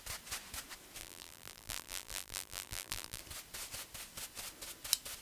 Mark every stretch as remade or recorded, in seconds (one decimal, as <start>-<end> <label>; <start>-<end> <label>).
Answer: 0.0-1.0 recorded; 1.0-3.2 remade; 3.2-5.2 recorded